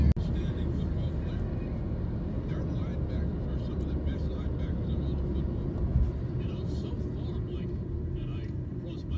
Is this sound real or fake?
real